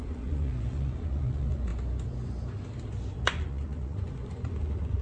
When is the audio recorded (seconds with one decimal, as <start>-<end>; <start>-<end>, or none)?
1.7-3.3